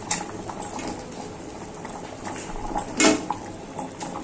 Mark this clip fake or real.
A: real